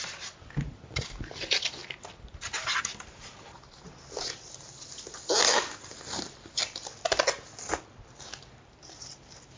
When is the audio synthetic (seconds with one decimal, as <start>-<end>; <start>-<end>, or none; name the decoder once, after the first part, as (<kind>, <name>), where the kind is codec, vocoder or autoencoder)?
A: none